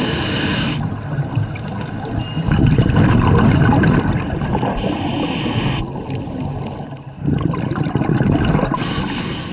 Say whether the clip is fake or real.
real